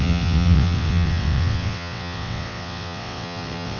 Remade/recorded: remade